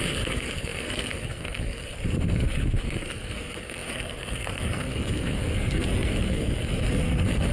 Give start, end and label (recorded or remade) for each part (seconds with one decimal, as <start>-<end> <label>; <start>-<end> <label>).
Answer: 0.0-7.5 remade